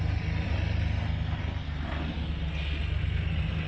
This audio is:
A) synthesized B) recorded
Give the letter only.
B